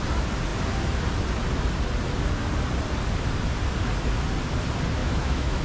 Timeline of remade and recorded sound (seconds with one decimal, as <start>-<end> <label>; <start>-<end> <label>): 0.0-5.0 recorded; 5.0-5.6 remade